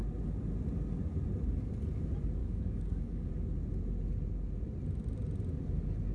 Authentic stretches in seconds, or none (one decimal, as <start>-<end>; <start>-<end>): 0.0-2.4; 3.3-6.1